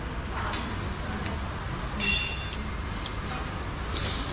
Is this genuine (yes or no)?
yes